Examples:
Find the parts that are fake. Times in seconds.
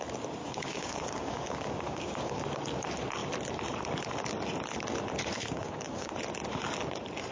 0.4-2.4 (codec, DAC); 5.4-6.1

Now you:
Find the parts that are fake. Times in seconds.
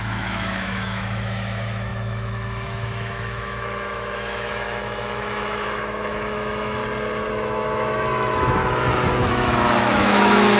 0.0-6.8 (autoencoder, DAC-VAE); 7.3-8.6; 9.3-10.6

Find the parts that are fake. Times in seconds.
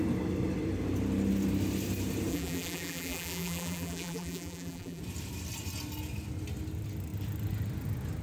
2.3-5.0 (vocoder, BigVGAN v2)